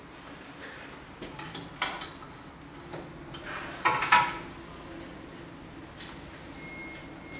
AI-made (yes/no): no